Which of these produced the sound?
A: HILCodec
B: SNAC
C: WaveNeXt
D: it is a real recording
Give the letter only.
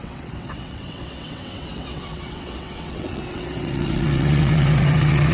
C